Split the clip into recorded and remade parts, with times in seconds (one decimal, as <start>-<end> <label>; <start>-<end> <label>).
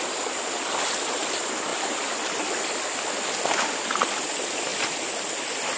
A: 0.0-5.8 recorded